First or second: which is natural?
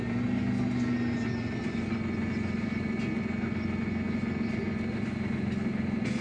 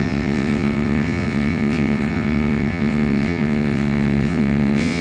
first